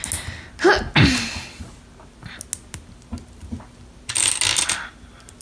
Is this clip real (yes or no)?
yes